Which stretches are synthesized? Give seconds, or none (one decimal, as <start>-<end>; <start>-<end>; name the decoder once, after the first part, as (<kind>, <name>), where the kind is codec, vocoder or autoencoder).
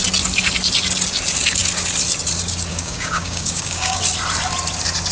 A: 2.7-4.0 (codec, DAC)